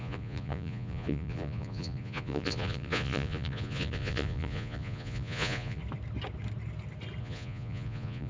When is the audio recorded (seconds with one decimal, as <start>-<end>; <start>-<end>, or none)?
5.8-7.2

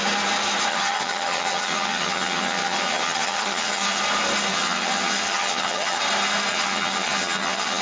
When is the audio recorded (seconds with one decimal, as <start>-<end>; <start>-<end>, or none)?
0.0-0.7; 4.0-4.5; 6.0-6.5

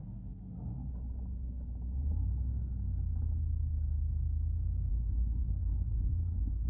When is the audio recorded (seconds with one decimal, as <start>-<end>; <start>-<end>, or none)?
0.9-4.9